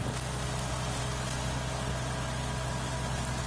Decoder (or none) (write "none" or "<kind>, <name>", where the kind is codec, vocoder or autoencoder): none